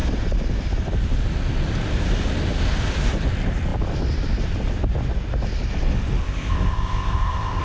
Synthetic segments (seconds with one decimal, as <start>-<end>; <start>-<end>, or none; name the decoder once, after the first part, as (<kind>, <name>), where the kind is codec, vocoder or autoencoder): 6.2-7.6 (codec, ZipCodec)